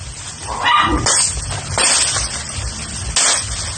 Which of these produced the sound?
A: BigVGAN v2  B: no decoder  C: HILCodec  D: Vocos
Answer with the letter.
B